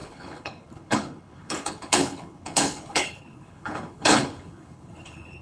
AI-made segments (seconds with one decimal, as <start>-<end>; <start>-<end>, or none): 0.0-5.4